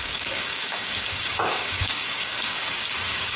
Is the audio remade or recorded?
remade